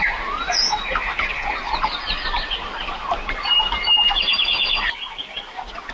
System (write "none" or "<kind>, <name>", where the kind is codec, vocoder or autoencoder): none